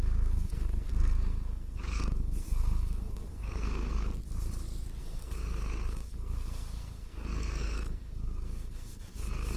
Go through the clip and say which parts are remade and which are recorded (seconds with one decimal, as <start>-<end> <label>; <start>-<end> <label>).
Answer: 0.0-4.2 remade; 4.2-5.0 recorded; 5.0-9.6 remade